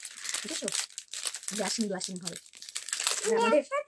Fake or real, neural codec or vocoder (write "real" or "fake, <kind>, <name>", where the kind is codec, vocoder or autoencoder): real